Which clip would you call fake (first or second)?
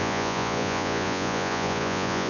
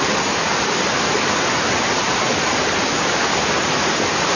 first